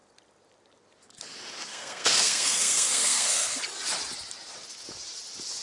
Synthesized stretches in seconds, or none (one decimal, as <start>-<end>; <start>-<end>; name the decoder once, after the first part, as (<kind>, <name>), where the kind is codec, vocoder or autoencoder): 1.7-3.6 (codec, SNAC)